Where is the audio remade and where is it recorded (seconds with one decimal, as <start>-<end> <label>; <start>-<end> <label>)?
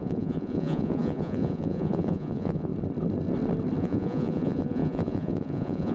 0.0-2.7 remade; 2.7-3.8 recorded; 3.8-5.9 remade